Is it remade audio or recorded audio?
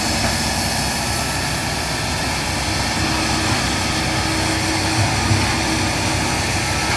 recorded